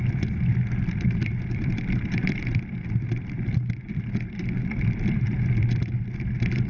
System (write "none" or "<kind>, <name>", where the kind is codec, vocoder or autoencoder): vocoder, BigVGAN v2